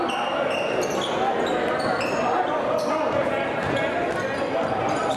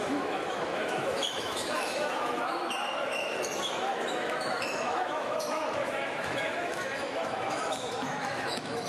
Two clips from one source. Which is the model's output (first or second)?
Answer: second